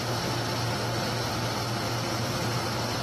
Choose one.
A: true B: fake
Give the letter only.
A